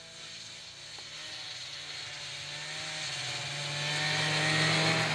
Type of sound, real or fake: real